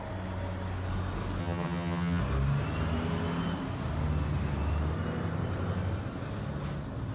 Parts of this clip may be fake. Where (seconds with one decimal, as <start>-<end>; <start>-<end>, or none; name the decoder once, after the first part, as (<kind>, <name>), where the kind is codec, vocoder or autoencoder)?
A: 1.4-2.2 (vocoder, HiFi-GAN)